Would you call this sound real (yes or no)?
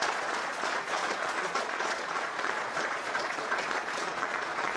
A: no